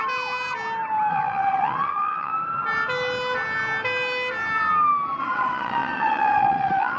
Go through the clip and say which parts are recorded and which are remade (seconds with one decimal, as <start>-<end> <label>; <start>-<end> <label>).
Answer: 0.0-1.1 recorded; 1.1-2.3 remade; 2.3-5.2 recorded; 5.2-7.0 remade